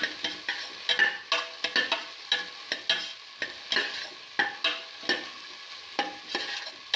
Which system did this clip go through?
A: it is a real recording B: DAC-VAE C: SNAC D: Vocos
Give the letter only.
A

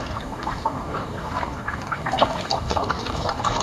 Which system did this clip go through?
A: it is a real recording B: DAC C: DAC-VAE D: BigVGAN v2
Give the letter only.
B